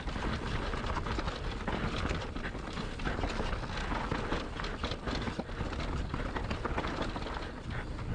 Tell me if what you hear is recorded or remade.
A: recorded